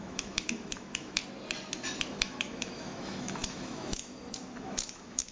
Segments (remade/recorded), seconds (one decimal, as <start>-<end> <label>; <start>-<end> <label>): 0.0-1.2 remade; 1.2-2.1 recorded; 2.1-5.3 remade